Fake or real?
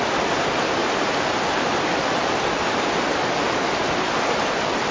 real